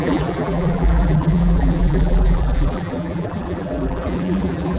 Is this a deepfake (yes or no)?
yes